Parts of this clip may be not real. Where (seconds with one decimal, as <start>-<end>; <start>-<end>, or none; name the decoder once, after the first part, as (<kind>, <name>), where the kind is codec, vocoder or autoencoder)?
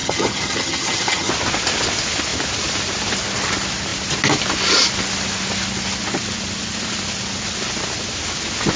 0.0-1.3 (vocoder, HiFi-GAN)